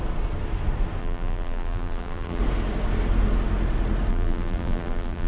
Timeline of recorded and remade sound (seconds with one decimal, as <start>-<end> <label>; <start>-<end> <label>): 0.0-1.0 recorded; 1.0-2.4 remade; 2.4-4.1 recorded; 4.1-5.3 remade